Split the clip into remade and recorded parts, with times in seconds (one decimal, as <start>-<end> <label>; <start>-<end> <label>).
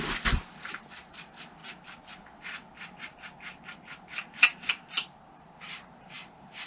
0.0-1.6 remade; 1.6-5.6 recorded; 5.6-6.7 remade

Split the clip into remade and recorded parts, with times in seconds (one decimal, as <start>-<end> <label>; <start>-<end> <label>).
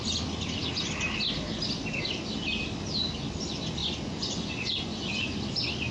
0.0-3.8 recorded; 3.8-5.5 remade; 5.5-5.9 recorded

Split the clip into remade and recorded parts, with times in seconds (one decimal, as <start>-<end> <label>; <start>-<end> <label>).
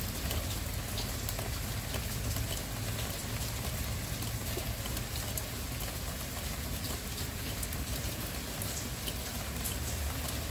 0.0-4.4 recorded; 4.4-8.2 remade; 8.2-10.5 recorded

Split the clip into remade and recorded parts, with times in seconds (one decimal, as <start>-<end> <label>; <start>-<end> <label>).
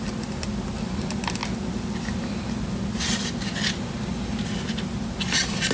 0.0-5.7 recorded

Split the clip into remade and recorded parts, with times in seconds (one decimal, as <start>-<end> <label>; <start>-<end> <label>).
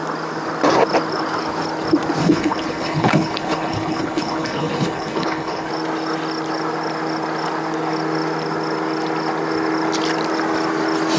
0.0-2.2 recorded; 2.2-5.7 remade; 5.7-11.2 recorded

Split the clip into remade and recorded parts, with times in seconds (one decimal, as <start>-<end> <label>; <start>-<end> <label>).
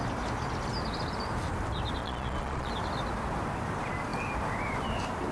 0.0-2.0 recorded; 2.0-2.7 remade; 2.7-5.3 recorded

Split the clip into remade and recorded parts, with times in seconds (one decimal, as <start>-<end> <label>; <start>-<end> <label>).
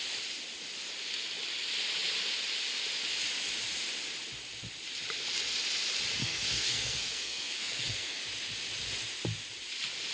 0.0-6.2 recorded; 6.2-8.2 remade; 8.2-10.1 recorded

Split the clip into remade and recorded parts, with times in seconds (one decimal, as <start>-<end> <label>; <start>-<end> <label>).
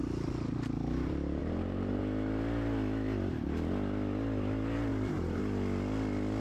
0.0-1.4 recorded; 1.4-2.0 remade; 2.0-4.9 recorded; 4.9-5.4 remade; 5.4-6.4 recorded